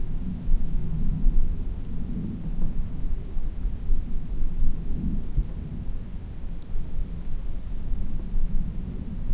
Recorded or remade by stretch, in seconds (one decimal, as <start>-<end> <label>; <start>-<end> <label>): 0.0-9.3 recorded